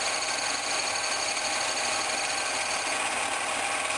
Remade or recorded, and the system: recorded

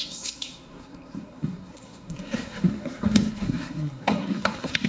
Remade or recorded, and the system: remade, codec, SNAC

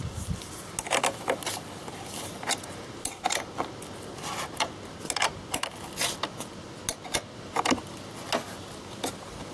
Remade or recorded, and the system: recorded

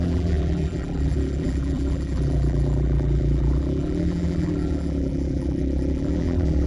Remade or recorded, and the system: remade, vocoder, BigVGAN v2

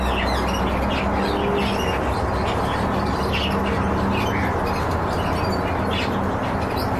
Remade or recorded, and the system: recorded